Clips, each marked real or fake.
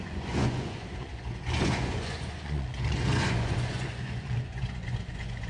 fake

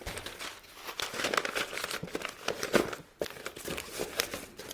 real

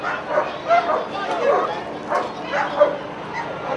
real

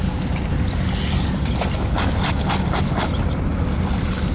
real